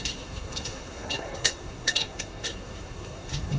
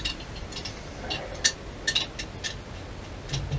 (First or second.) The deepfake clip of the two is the first